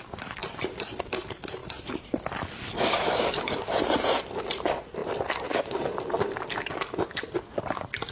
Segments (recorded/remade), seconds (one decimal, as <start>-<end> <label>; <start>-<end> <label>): 0.0-0.4 recorded; 0.4-1.1 remade; 1.1-1.6 recorded; 1.6-4.1 remade; 4.1-5.0 recorded; 5.0-7.4 remade; 7.4-8.1 recorded